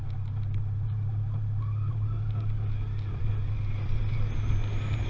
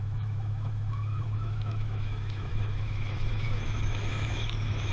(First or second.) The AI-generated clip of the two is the second